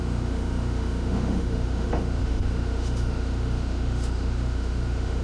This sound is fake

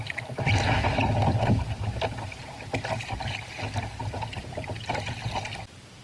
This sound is fake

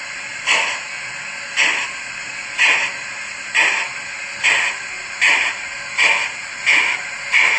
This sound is real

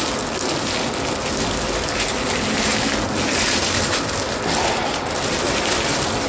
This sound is real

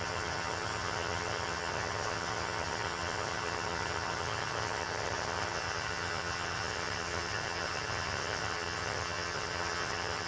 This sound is fake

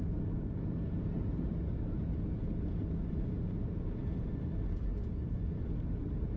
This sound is fake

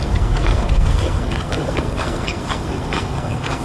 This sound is fake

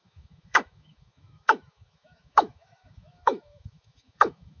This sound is fake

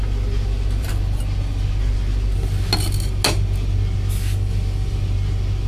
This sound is real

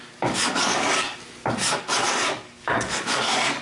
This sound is fake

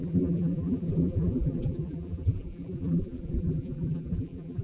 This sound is fake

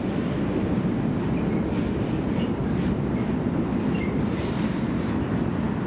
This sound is real